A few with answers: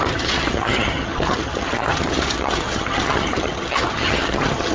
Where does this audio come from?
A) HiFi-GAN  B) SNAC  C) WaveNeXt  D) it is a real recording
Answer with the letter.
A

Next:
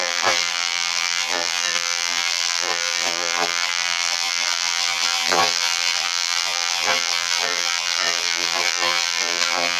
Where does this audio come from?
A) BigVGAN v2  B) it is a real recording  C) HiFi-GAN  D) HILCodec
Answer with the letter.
A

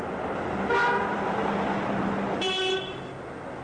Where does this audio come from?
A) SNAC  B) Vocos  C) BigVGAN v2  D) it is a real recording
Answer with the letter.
D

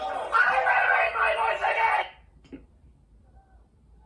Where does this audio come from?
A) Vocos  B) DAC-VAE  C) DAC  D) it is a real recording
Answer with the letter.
D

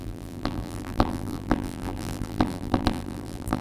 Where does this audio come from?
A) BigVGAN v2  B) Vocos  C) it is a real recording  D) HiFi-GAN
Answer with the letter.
A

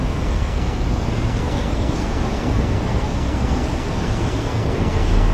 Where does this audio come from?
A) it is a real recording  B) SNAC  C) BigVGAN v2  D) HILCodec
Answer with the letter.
B